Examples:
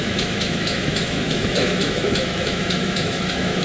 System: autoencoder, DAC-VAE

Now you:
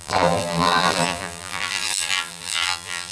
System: vocoder, BigVGAN v2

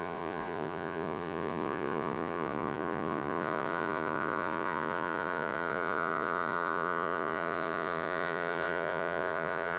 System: vocoder, Vocos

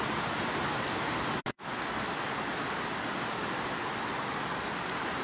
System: none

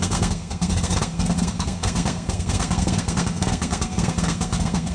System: codec, SNAC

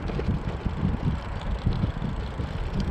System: none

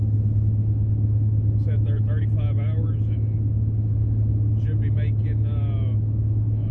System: none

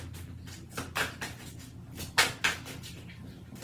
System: none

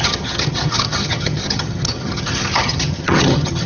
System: vocoder, HiFi-GAN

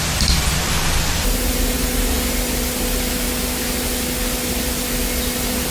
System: none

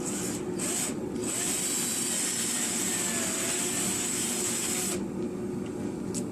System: none